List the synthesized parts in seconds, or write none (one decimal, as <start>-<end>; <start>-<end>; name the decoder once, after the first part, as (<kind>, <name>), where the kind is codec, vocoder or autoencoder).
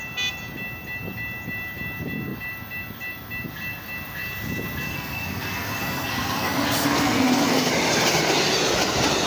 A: 4.9-7.7 (codec, SNAC)